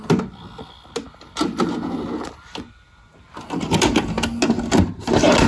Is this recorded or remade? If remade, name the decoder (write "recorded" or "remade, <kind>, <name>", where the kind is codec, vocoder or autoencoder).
recorded